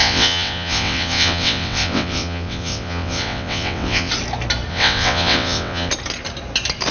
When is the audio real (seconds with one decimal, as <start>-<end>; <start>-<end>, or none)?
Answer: 4.1-4.7; 5.9-6.9